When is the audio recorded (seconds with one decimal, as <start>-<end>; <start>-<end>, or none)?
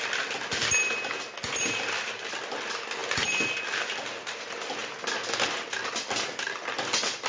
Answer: 0.0-7.3